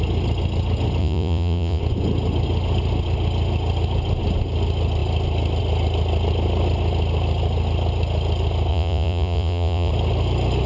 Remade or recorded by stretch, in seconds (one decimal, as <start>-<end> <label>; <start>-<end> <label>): 0.0-1.0 recorded; 1.0-1.8 remade; 1.8-8.7 recorded; 8.7-9.9 remade; 9.9-10.7 recorded